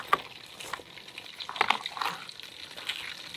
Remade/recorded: recorded